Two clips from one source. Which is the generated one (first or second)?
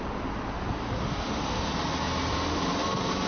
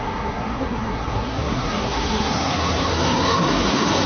second